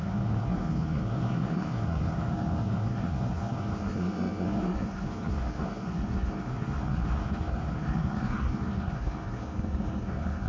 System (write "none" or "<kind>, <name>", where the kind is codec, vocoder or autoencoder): codec, SNAC